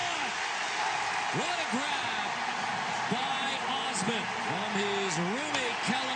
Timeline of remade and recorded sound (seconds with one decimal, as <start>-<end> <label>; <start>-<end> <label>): 0.0-6.2 recorded